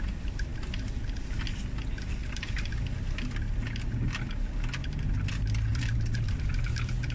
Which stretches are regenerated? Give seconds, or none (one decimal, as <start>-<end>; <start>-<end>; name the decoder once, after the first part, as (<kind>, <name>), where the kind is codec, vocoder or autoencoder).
0.5-1.4 (vocoder, BigVGAN v2); 2.2-2.7; 5.7-6.5